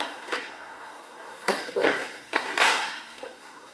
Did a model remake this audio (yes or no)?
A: yes